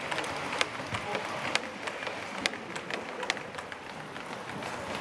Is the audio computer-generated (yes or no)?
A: no